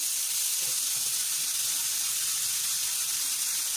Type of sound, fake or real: real